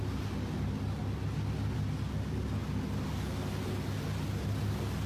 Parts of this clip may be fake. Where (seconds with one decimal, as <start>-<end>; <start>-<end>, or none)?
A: none